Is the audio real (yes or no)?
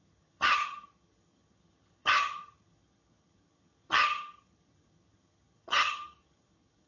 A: no